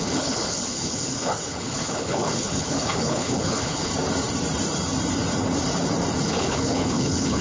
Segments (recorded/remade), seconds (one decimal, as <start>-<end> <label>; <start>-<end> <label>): 0.0-3.9 remade; 3.9-6.2 recorded; 6.2-7.4 remade